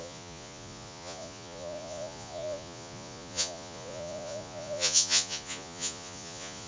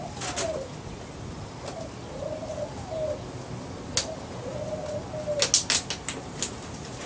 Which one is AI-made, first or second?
first